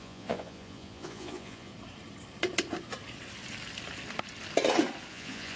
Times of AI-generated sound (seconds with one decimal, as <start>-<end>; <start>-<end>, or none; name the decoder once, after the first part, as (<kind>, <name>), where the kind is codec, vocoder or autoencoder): 0.0-1.7 (vocoder, Vocos); 5.1-5.6